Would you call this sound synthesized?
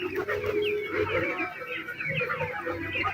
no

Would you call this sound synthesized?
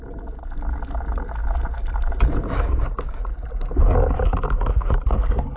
no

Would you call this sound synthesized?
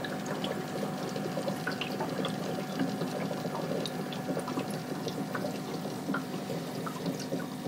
no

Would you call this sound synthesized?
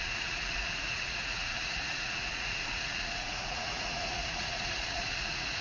yes